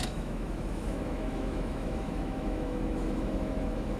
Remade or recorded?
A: remade